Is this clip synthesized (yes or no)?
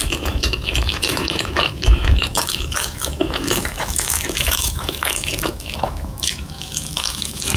yes